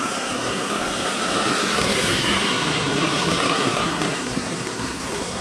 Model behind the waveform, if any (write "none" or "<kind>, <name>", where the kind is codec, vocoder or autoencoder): codec, SNAC